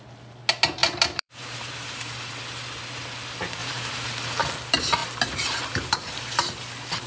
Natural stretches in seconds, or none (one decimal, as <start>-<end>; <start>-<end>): 0.0-0.8; 2.3-3.6; 4.4-5.0; 6.4-7.1